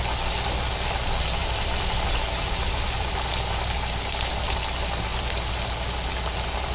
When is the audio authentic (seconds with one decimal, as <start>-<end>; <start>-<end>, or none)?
0.0-1.4; 3.1-6.7